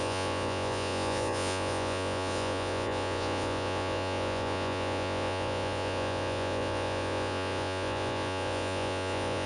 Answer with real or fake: fake